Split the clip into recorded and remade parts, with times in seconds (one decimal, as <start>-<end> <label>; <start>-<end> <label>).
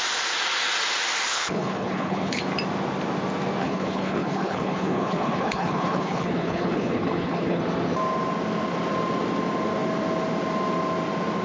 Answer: 0.0-1.3 recorded; 1.3-2.4 remade; 2.4-3.6 recorded; 3.6-7.6 remade; 7.6-11.4 recorded